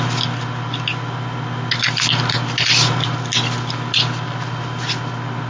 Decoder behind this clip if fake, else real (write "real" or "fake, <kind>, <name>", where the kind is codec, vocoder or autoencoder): real